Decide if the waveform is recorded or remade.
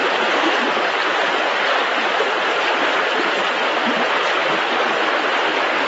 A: remade